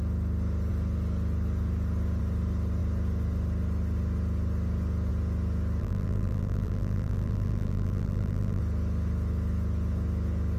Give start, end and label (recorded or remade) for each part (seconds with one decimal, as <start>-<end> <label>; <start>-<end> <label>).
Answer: 0.0-5.8 recorded; 5.8-8.6 remade; 8.6-10.6 recorded